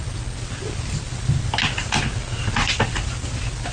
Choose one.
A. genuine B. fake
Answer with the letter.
A